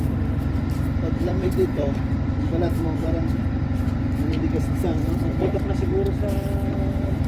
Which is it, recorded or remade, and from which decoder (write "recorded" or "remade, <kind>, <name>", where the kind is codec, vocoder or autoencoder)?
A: remade, vocoder, BigVGAN v2